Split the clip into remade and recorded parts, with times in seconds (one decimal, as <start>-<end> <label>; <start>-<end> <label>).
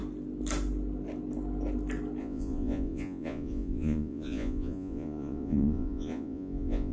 0.0-2.2 recorded; 2.2-6.9 remade